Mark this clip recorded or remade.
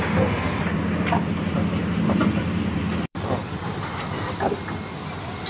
remade